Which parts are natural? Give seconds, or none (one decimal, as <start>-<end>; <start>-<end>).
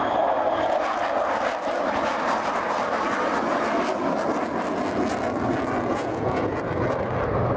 0.0-5.9; 6.6-7.6